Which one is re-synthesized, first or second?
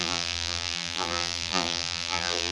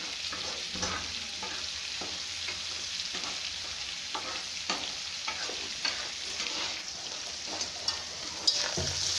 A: first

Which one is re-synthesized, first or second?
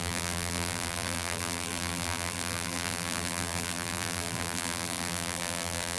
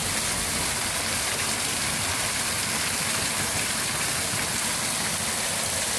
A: first